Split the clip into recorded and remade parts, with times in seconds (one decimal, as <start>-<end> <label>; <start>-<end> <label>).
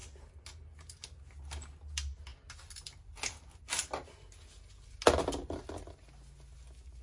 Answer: 0.0-7.0 recorded